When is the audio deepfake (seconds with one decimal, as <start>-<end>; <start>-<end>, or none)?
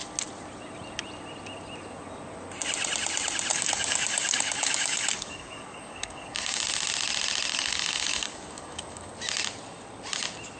3.5-6.6; 7.5-9.1